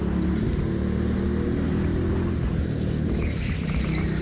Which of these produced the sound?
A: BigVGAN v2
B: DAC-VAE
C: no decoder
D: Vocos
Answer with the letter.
C